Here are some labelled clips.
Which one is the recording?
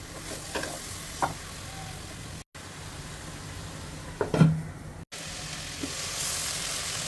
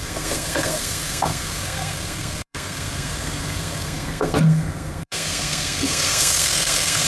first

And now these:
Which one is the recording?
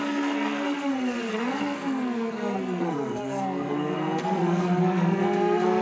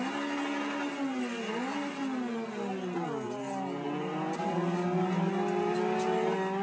second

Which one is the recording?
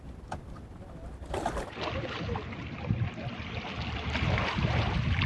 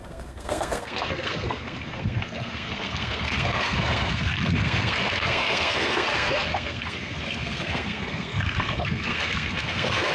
first